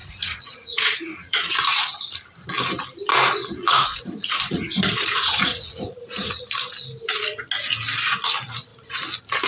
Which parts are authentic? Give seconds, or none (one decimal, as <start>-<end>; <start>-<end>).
1.5-3.4; 6.4-9.5